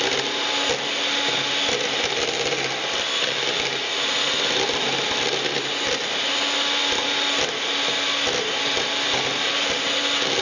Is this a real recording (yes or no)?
yes